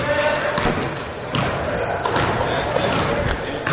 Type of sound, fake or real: real